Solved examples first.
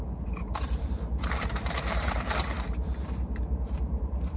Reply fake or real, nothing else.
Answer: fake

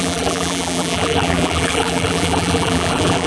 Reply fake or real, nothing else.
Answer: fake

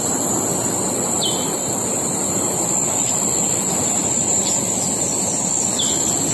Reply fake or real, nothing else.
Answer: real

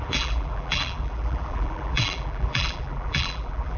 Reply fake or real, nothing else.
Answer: fake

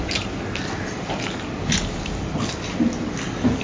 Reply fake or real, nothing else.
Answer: real